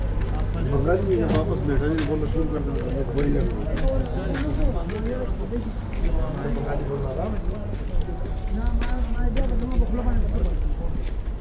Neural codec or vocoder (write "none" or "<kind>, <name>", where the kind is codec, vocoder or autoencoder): none